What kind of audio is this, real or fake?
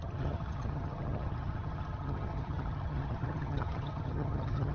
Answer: fake